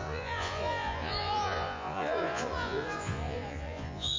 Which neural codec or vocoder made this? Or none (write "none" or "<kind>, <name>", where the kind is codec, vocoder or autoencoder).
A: vocoder, Vocos